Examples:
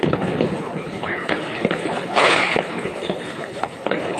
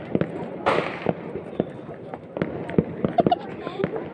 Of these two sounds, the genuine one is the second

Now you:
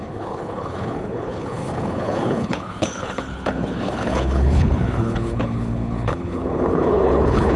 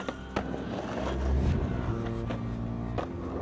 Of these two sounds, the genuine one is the second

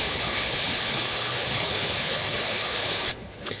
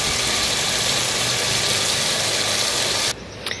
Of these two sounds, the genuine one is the second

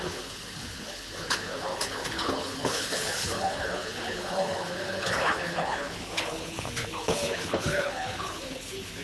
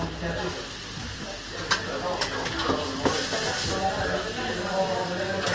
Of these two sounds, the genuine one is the second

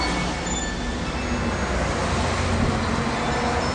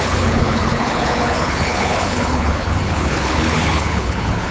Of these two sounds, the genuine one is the first